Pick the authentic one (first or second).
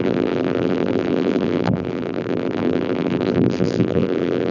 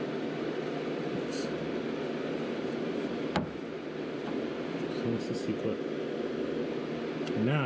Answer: second